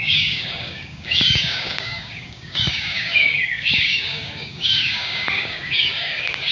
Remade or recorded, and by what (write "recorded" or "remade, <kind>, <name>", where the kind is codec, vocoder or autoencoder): remade, codec, DAC